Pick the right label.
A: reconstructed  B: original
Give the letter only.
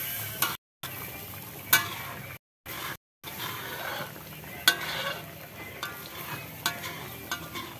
B